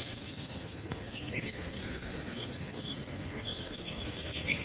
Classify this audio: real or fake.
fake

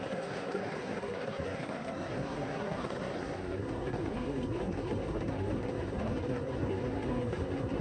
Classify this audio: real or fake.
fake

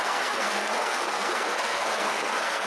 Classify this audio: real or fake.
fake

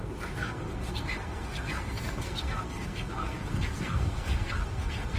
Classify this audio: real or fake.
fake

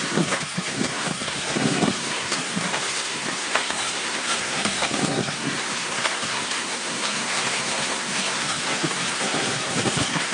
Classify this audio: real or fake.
fake